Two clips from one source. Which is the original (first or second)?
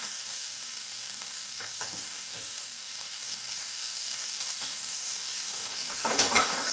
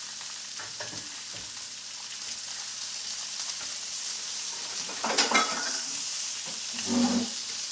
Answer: second